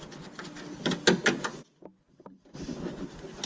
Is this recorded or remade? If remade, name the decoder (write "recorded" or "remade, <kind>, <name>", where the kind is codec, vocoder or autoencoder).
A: recorded